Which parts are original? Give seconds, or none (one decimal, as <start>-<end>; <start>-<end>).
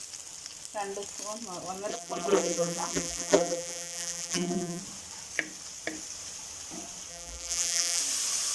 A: 0.0-1.9; 4.8-7.1; 8.0-8.5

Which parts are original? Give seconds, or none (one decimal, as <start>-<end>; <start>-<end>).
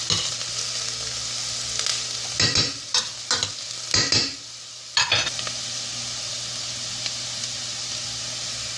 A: 0.0-8.8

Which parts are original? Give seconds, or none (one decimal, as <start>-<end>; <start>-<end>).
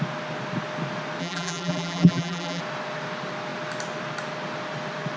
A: 0.0-1.2; 2.6-5.2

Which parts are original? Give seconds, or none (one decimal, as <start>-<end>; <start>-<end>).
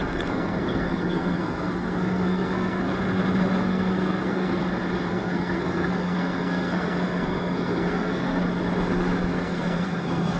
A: 2.9-3.6; 4.6-5.1; 8.4-9.3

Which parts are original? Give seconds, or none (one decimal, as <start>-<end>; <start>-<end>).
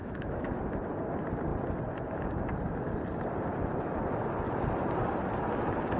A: 0.6-6.0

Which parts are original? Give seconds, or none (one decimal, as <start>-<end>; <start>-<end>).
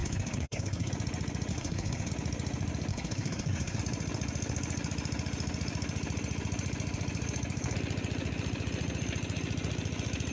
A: 0.9-1.5; 2.1-2.9; 3.8-10.3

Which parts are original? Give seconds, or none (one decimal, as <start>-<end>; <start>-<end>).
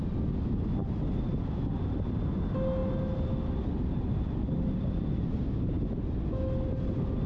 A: 0.0-7.3